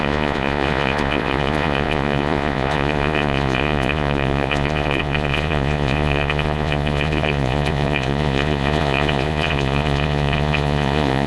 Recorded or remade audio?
remade